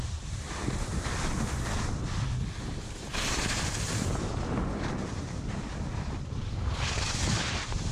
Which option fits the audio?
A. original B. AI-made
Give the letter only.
A